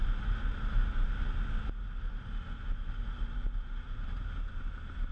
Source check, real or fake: real